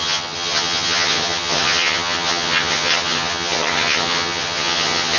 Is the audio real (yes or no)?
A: no